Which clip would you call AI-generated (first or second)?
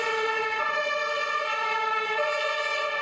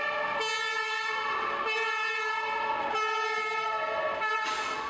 first